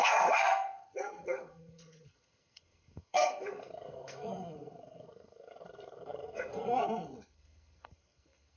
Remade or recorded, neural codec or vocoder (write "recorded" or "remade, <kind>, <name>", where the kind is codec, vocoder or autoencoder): remade, codec, SNAC